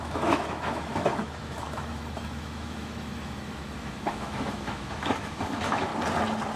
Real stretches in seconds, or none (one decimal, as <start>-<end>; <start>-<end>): 5.9-6.6